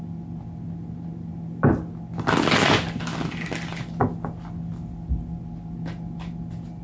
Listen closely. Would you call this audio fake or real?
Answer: real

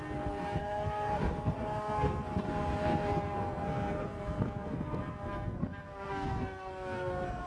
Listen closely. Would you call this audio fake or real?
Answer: fake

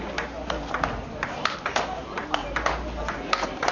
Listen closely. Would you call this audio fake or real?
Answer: real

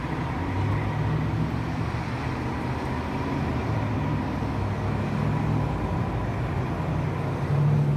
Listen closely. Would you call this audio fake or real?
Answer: real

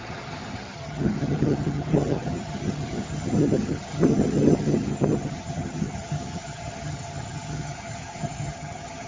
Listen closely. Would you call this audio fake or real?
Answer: fake